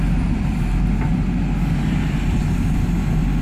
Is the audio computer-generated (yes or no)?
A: no